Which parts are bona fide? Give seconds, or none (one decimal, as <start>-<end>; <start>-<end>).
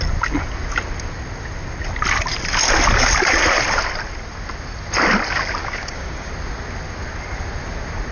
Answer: 0.0-5.6; 6.3-8.1